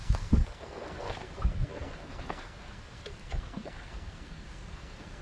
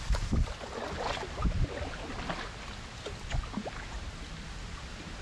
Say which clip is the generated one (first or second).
first